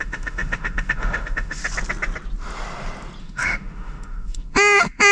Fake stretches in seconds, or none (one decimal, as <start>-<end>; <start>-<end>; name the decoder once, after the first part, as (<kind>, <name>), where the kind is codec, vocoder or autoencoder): 0.0-1.6 (autoencoder, DAC-VAE); 3.2-5.1

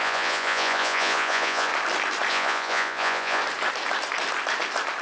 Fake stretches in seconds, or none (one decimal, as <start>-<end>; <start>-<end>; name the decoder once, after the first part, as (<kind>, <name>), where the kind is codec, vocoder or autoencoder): 0.0-1.7 (vocoder, Vocos); 2.3-3.4

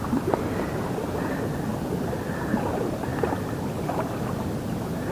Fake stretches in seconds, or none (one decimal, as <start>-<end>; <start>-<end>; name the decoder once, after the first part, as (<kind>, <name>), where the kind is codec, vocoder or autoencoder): 1.7-2.7 (vocoder, BigVGAN v2)

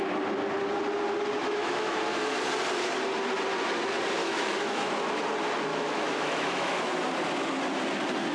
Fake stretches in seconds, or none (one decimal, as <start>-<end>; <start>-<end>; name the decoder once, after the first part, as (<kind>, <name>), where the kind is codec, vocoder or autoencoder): 1.4-2.0 (autoencoder, DAC-VAE); 4.2-4.9; 5.7-6.9

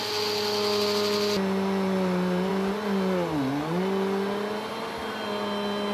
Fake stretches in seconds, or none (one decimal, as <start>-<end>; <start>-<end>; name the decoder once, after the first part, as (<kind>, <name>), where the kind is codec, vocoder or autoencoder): none

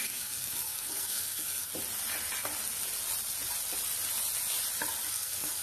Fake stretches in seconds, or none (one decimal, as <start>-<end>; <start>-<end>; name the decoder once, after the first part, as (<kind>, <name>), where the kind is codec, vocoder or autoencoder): 0.0-1.7 (codec, SNAC); 5.1-5.6

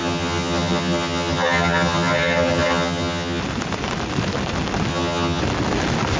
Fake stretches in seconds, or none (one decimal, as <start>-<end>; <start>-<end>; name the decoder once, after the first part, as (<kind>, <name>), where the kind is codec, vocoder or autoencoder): 0.0-3.4 (vocoder, HiFi-GAN); 4.9-5.4

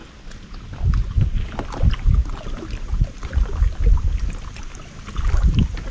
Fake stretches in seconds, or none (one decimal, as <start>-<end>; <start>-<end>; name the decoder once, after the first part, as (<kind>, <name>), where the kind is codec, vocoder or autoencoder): none